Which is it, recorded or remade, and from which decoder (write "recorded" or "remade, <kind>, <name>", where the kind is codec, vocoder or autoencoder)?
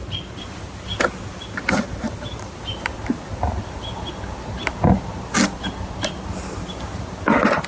recorded